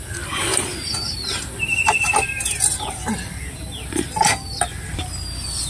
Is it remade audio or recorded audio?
recorded